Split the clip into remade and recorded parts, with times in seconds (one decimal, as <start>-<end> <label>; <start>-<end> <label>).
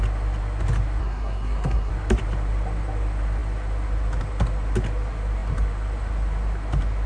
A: 0.0-1.0 recorded; 1.0-1.9 remade; 1.9-7.1 recorded